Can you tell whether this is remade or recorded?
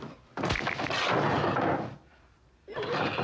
recorded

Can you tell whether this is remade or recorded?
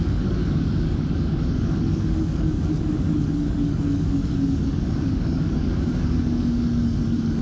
remade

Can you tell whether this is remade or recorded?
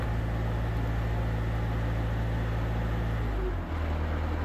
recorded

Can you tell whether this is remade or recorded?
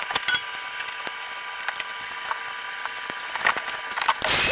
recorded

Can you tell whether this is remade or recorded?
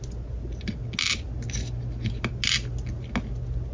recorded